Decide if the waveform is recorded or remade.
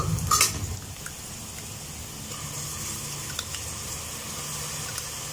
recorded